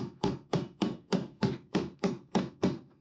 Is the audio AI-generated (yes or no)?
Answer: yes